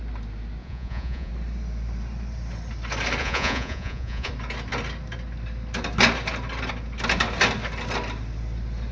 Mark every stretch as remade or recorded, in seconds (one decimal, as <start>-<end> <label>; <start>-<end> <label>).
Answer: 0.0-0.6 recorded; 0.6-1.3 remade; 1.3-3.2 recorded; 3.2-4.3 remade; 4.3-8.9 recorded